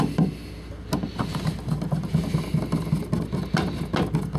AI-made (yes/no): no